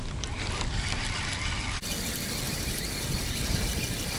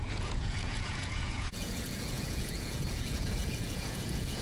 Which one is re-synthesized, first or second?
second